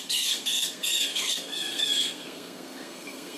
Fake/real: fake